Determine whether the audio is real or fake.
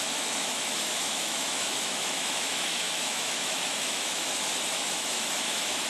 fake